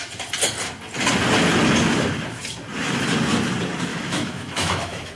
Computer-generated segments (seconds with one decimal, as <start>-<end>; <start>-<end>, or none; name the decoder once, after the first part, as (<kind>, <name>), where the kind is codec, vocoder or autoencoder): 3.9-5.2 (autoencoder, DAC-VAE)

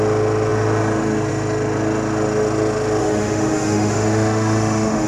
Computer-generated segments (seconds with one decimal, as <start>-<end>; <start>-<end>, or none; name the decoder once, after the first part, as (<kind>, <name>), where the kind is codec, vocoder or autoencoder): 3.0-5.1 (autoencoder, DAC-VAE)

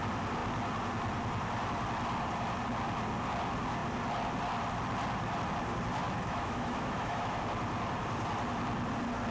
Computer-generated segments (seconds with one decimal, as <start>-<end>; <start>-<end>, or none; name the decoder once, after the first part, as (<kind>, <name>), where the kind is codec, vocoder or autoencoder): 6.0-7.4 (autoencoder, DAC-VAE)

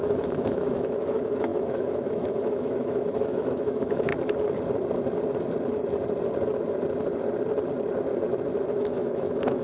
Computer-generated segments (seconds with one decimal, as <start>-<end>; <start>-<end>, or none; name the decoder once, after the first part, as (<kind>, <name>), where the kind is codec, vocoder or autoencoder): 0.0-4.1 (autoencoder, DAC-VAE); 8.8-9.6